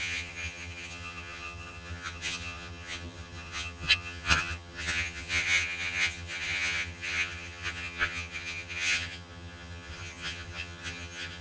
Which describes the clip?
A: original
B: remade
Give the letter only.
B